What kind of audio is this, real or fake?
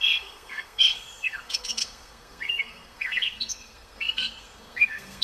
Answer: fake